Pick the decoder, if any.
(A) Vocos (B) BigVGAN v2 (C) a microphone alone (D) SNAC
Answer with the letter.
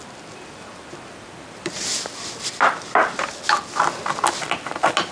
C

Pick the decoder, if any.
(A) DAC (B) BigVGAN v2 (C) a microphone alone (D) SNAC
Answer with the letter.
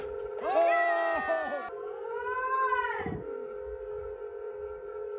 C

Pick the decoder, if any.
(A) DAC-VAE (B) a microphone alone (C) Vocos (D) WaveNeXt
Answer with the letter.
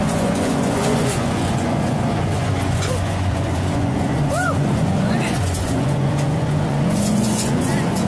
C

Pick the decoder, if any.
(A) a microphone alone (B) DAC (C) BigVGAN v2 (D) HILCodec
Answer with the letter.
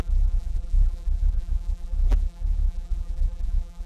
C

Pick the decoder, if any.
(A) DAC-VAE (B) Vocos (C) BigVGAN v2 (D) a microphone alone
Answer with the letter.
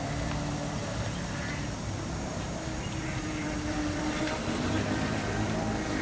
C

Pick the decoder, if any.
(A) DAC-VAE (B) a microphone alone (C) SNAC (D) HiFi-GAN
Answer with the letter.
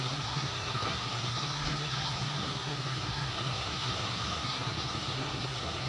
C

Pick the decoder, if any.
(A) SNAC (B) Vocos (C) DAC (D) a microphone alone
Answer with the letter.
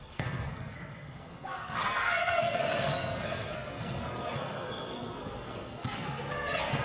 A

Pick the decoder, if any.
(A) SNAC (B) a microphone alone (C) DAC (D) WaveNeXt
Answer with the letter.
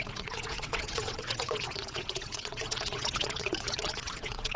D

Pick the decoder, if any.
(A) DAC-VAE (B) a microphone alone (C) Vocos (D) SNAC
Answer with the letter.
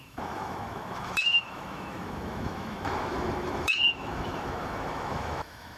A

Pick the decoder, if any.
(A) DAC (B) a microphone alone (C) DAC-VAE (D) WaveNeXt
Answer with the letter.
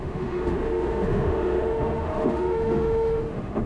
C